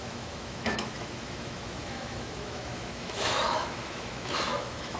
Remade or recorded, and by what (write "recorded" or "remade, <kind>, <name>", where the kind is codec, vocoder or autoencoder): remade, autoencoder, DAC-VAE